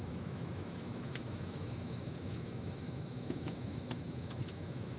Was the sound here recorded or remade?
remade